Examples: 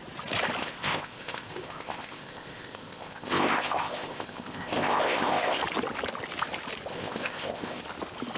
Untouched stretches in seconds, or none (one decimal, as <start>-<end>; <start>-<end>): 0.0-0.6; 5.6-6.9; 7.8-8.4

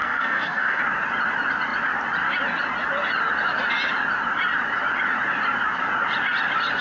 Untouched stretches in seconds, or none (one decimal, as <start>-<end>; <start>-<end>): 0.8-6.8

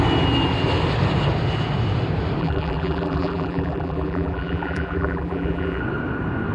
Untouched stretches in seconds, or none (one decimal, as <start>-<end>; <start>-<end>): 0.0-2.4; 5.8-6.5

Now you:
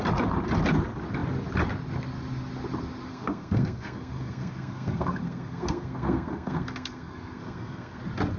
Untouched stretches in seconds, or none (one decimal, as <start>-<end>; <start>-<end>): 0.0-3.1; 8.0-8.4

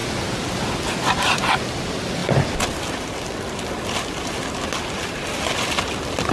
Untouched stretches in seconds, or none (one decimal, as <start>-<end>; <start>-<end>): 0.0-6.3